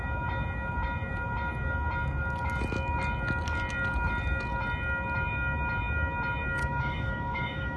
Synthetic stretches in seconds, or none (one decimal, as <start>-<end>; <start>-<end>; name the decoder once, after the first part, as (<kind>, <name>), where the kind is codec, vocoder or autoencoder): 6.6-7.8 (autoencoder, DAC-VAE)